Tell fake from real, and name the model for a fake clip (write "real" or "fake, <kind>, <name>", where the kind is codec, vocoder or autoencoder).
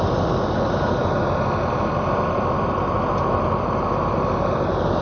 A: fake, vocoder, BigVGAN v2